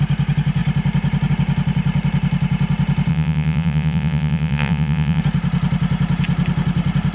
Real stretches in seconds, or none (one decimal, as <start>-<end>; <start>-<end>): 0.0-3.1; 5.2-7.1